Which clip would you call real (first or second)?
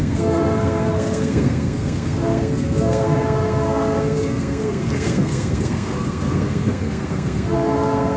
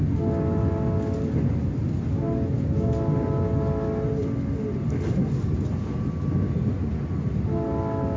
second